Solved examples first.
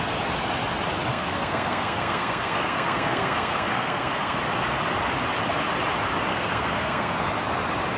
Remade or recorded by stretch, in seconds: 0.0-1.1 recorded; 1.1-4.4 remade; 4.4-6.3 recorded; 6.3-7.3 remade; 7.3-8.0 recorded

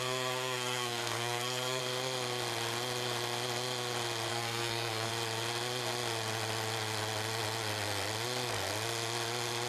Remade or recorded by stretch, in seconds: 0.0-1.8 remade; 1.8-4.3 recorded; 4.3-5.1 remade; 5.1-9.7 recorded